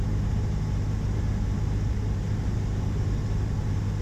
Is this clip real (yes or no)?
yes